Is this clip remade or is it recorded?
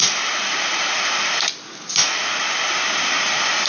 recorded